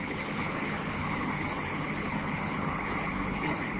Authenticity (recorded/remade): remade